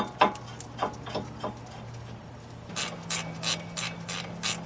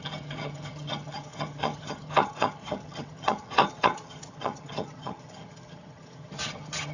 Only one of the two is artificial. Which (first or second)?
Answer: second